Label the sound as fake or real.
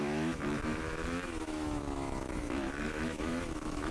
fake